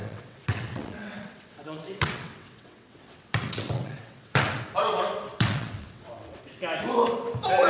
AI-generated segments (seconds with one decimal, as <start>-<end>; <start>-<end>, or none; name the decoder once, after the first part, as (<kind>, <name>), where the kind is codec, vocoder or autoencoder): 0.0-4.6 (vocoder, WaveNeXt); 5.3-6.5